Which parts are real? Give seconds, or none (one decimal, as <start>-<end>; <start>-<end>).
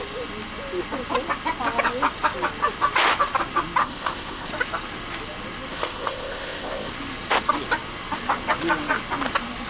0.0-3.8; 4.5-5.7; 6.9-9.7